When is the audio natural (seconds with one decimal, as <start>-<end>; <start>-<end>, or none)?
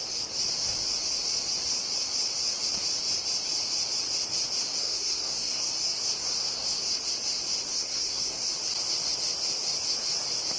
0.0-4.8; 5.7-6.2; 6.8-7.7; 8.5-10.6